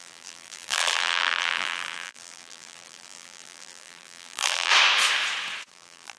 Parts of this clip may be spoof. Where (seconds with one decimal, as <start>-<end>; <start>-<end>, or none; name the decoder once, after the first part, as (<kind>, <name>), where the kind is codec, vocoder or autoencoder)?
0.0-4.7 (vocoder, BigVGAN v2); 5.7-6.2

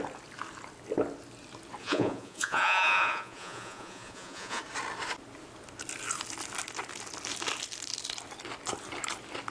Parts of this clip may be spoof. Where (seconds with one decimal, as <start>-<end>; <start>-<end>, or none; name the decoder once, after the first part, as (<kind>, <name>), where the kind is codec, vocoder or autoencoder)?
1.8-4.6 (vocoder, Vocos)

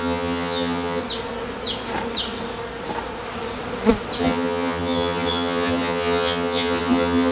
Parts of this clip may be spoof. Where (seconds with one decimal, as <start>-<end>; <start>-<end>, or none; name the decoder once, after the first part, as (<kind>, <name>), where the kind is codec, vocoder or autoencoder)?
0.0-1.0 (vocoder, HiFi-GAN); 4.2-7.3

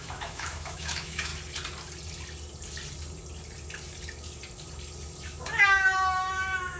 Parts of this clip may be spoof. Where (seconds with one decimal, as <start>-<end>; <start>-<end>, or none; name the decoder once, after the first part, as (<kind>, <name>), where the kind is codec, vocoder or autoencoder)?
0.0-1.3 (autoencoder, DAC-VAE); 5.4-6.8

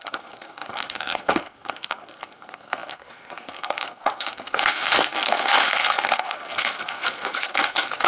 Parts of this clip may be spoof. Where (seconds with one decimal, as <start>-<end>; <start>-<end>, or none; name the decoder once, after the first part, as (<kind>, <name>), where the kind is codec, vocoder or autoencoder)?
0.0-8.1 (codec, SNAC)

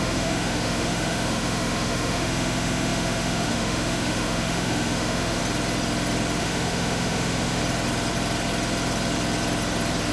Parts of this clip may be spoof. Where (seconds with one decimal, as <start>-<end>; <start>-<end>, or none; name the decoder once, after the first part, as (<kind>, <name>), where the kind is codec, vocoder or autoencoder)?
0.0-5.4 (autoencoder, DAC-VAE); 6.4-7.6

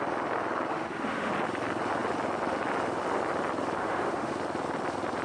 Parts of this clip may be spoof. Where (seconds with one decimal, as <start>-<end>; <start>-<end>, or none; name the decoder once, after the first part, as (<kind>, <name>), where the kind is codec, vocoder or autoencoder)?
0.7-1.3 (autoencoder, DAC-VAE); 3.8-4.3

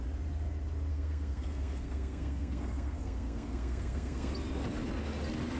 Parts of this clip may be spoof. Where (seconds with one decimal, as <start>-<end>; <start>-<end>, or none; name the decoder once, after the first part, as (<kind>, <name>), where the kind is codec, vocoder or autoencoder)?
0.9-4.3 (codec, SNAC)